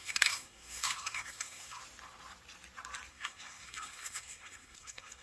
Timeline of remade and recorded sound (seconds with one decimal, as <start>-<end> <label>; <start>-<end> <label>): 0.0-1.8 remade; 1.8-3.1 recorded; 3.1-5.2 remade

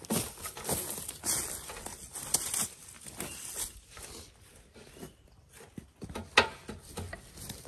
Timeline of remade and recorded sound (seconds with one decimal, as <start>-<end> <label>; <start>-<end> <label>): 0.0-7.7 recorded

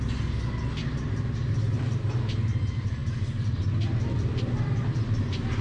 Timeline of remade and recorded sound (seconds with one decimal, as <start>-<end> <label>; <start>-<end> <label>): 0.0-5.6 recorded

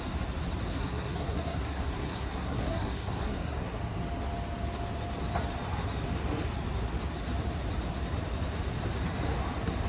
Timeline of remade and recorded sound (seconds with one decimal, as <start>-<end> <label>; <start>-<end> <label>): 0.0-0.7 recorded; 0.7-3.8 remade; 3.8-9.9 recorded

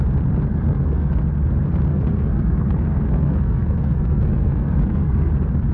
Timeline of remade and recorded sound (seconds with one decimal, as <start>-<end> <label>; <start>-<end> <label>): 0.0-0.5 recorded; 0.5-1.1 remade; 1.1-1.9 recorded; 1.9-5.3 remade; 5.3-5.7 recorded

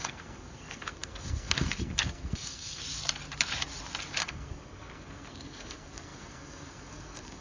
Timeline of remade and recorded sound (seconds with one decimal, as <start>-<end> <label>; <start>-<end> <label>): 0.0-2.8 remade; 2.8-4.2 recorded; 4.2-7.4 remade

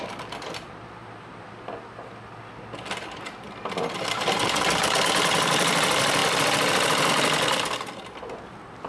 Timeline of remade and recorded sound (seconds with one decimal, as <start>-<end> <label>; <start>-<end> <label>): 0.0-8.9 recorded